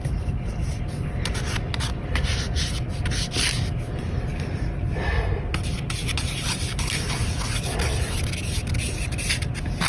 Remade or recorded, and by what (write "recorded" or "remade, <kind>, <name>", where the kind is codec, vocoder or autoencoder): recorded